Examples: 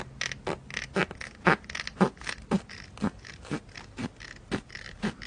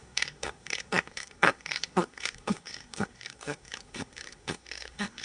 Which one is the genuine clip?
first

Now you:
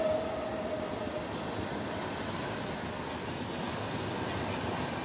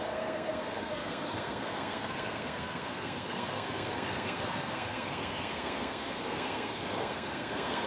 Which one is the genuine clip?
first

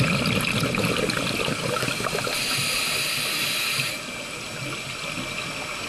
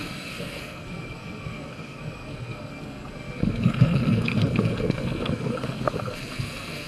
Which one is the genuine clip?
first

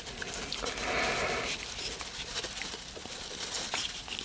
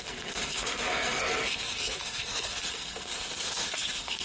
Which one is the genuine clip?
first